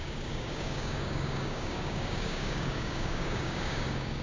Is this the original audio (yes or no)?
no